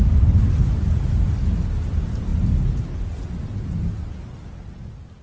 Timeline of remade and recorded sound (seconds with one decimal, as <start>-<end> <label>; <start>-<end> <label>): 0.0-5.2 recorded